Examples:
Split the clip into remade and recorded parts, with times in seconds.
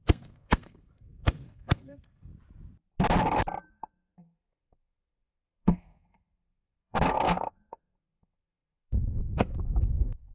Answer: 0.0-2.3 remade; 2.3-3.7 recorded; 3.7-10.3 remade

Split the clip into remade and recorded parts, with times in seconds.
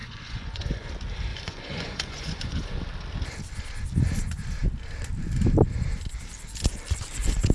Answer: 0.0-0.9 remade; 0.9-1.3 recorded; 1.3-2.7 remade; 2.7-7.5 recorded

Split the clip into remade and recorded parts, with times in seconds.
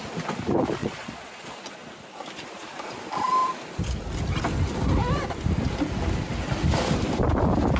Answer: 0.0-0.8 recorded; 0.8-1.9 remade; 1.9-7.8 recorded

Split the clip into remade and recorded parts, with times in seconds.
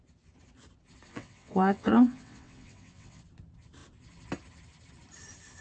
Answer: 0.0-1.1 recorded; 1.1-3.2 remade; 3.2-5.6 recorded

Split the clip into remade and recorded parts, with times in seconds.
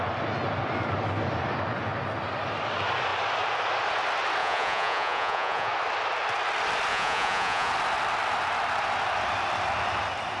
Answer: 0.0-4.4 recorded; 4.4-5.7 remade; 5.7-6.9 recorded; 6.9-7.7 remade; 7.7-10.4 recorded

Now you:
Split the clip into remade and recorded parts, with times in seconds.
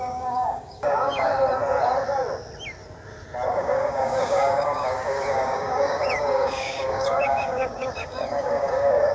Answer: 0.0-1.3 remade; 1.3-3.5 recorded; 3.5-9.1 remade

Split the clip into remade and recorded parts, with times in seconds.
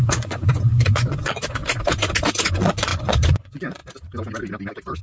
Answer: 0.0-1.6 remade; 1.6-2.5 recorded; 2.5-3.8 remade; 3.8-5.0 recorded